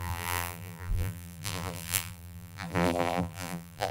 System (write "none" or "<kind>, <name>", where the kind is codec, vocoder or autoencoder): vocoder, BigVGAN v2